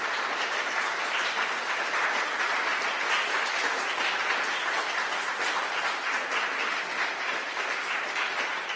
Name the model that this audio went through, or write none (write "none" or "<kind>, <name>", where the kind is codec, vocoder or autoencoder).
none